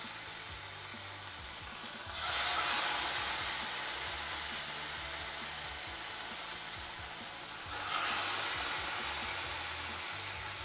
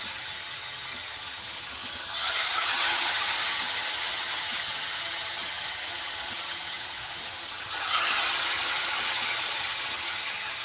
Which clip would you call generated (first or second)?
second